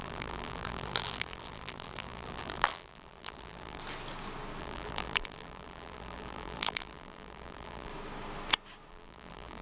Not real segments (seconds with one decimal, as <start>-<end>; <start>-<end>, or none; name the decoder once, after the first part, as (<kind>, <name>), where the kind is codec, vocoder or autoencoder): 0.0-3.8 (vocoder, BigVGAN v2); 4.6-7.9; 8.9-9.6